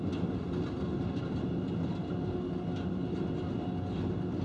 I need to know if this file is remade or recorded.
recorded